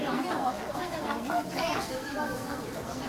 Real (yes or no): no